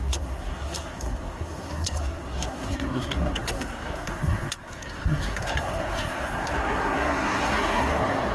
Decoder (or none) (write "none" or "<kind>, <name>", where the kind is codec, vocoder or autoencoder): codec, SNAC